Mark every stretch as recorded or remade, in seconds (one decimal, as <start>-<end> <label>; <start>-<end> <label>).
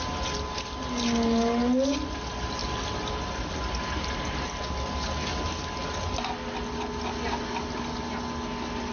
0.0-8.9 recorded